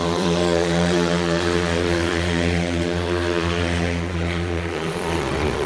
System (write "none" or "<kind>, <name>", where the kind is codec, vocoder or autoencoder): vocoder, Vocos